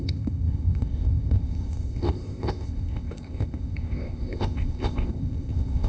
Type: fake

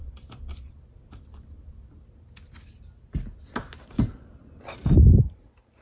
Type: real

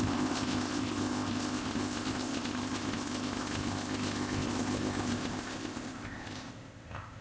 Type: fake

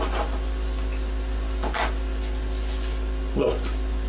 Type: real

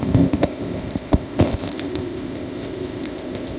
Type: fake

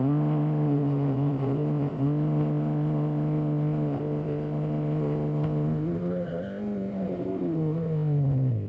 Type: fake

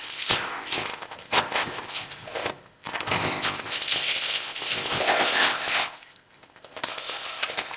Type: fake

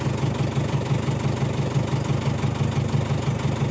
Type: real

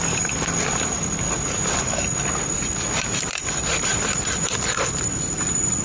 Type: real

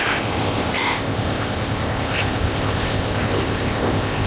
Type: fake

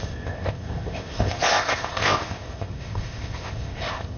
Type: fake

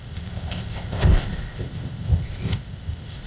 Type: fake